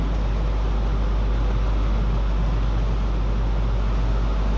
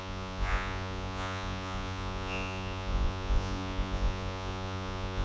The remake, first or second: second